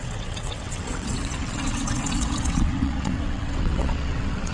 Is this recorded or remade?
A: remade